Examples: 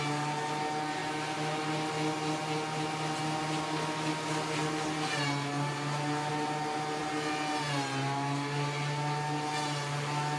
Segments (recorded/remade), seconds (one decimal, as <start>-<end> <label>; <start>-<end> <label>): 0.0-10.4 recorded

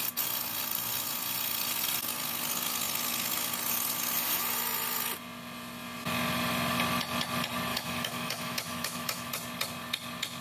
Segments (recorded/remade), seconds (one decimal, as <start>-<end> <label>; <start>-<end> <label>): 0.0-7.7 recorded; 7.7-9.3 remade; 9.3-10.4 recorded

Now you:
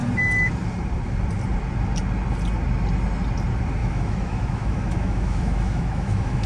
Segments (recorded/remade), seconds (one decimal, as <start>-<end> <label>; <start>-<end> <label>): 0.0-3.8 recorded; 3.8-6.5 remade